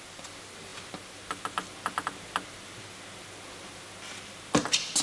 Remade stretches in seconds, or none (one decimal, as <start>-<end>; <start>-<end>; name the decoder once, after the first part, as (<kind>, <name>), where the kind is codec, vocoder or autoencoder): none